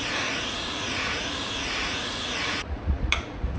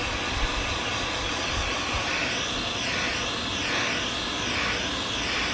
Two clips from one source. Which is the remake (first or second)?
first